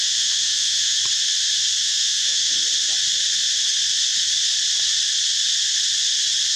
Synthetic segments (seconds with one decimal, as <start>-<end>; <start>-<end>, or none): 0.0-1.0; 1.8-2.6